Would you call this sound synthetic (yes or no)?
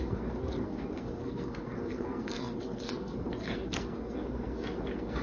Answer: yes